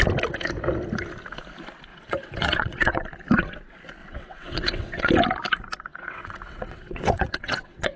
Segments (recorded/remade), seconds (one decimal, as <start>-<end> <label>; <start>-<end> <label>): 0.0-1.9 recorded; 1.9-3.0 remade; 3.0-4.0 recorded; 4.0-5.1 remade; 5.1-5.9 recorded; 5.9-8.0 remade